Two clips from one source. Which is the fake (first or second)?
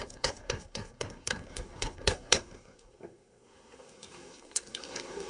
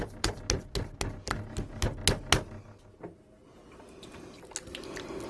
first